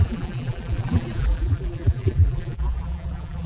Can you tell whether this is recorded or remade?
remade